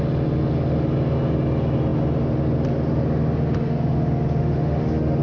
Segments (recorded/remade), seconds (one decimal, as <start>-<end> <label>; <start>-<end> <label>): 0.0-4.4 recorded; 4.4-5.2 remade